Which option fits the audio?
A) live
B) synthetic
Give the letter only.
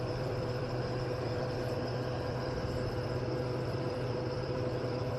B